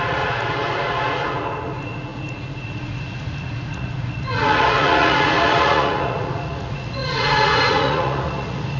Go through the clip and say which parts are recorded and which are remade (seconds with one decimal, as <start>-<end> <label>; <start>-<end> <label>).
0.0-8.8 remade